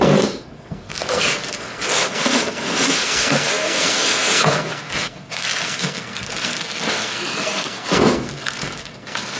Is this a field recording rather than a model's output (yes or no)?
no